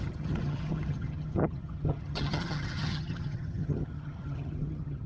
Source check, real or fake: fake